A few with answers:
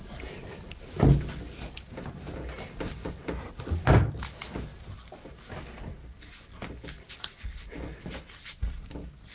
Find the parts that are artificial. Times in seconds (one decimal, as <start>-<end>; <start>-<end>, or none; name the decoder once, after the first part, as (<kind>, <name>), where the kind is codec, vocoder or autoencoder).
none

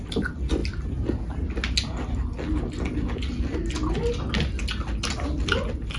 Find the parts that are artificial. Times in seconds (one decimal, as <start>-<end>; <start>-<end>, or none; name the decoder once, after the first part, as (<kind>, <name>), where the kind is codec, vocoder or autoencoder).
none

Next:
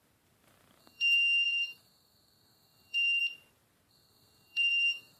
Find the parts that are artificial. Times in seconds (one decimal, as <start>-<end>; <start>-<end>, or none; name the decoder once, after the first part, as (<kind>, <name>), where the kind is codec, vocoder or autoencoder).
0.8-3.2 (codec, SNAC); 3.9-5.2